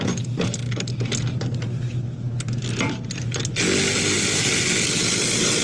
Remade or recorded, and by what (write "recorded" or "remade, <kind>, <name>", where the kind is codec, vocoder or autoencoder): recorded